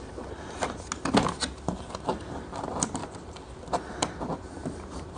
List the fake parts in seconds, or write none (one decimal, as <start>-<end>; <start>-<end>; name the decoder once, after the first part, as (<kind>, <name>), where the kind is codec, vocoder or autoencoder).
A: none